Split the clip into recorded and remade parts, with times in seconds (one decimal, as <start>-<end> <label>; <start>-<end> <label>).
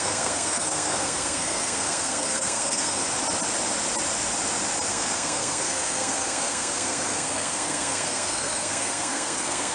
0.0-3.0 remade; 3.0-4.9 recorded; 4.9-9.7 remade